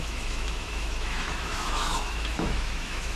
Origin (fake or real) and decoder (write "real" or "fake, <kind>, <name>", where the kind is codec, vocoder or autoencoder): fake, autoencoder, DAC-VAE